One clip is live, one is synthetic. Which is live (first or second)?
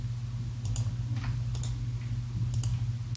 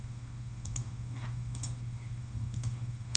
first